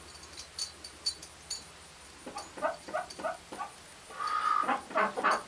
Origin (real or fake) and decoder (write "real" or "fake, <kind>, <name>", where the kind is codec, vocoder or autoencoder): real